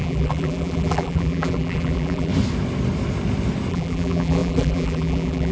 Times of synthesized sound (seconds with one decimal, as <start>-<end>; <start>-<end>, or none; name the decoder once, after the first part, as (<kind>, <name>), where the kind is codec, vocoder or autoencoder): 0.0-2.3 (vocoder, BigVGAN v2); 3.7-5.5